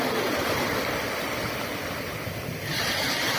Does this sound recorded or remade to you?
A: remade